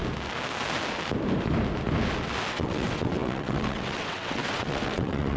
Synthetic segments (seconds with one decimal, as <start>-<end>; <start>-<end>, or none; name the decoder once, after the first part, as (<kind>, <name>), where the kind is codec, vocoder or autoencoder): 2.5-5.4 (vocoder, WaveNeXt)